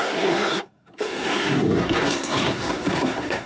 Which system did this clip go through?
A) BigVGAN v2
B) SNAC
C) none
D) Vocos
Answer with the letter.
B